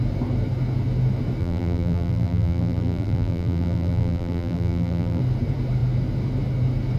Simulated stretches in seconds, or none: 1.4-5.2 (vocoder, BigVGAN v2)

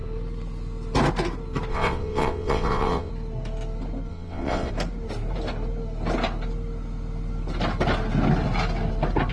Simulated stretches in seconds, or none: 1.7-3.1 (vocoder, WaveNeXt); 4.1-4.7

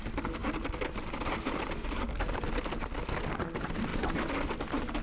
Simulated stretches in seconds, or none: none

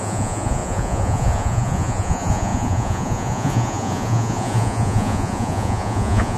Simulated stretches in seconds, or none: 0.0-6.4 (vocoder, Vocos)

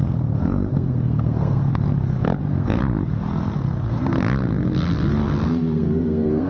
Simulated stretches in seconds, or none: 0.0-1.7 (codec, SNAC); 2.4-2.8; 5.5-6.5